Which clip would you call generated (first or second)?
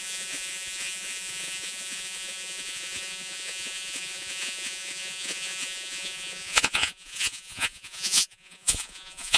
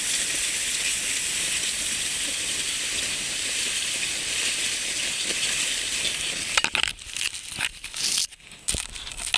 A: first